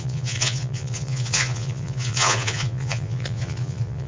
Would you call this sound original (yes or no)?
no